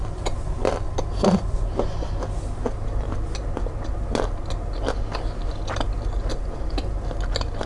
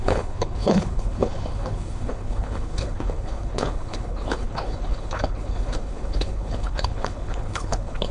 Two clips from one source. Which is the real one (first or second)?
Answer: first